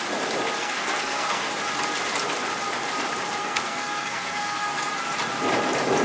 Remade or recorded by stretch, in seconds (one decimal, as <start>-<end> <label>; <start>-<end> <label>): 0.0-0.6 recorded; 0.6-1.5 remade; 1.5-3.4 recorded; 3.4-4.9 remade; 4.9-6.0 recorded